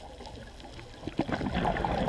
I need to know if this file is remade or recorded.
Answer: recorded